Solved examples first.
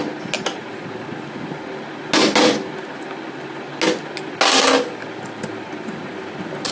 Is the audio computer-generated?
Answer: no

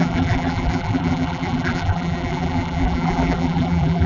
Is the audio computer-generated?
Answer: yes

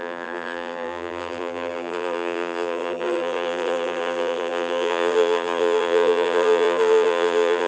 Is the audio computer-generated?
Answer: yes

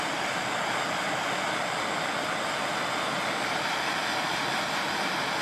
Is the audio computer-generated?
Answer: no